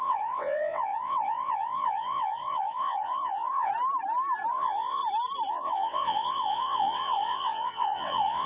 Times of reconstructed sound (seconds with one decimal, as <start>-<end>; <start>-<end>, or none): 0.0-3.7; 4.5-5.0; 5.5-8.5